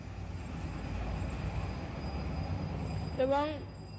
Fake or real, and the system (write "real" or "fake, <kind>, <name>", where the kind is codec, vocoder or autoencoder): real